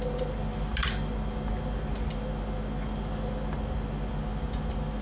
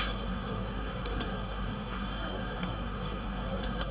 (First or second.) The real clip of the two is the first